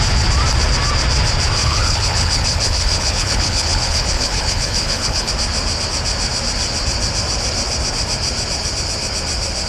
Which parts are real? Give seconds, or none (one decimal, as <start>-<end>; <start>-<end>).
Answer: 0.0-1.6; 5.3-9.7